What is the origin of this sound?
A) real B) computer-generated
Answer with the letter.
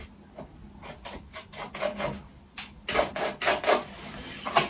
A